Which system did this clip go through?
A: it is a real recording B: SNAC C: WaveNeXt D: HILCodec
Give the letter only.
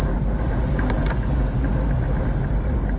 A